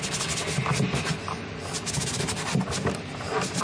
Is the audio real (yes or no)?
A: yes